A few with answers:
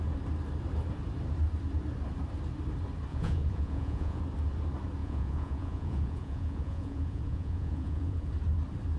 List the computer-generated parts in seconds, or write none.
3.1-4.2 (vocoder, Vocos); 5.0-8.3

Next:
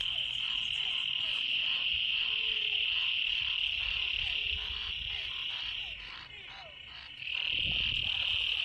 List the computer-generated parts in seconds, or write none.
0.0-3.4 (vocoder, Vocos)

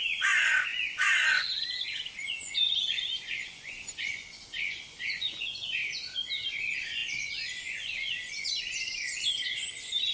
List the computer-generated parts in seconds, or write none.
0.0-5.8 (vocoder, Vocos); 6.5-10.1

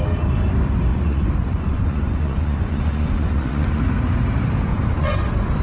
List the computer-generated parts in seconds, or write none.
0.9-3.8 (vocoder, Vocos); 4.7-5.6